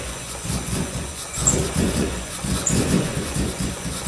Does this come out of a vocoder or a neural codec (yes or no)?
yes